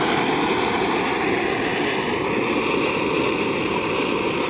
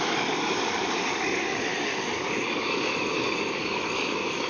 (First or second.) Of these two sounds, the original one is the first